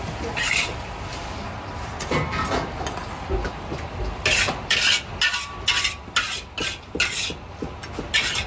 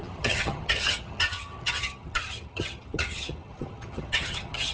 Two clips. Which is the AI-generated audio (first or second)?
second